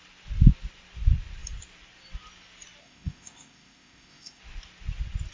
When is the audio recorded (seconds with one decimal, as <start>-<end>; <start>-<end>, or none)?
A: 0.0-2.8; 4.4-5.3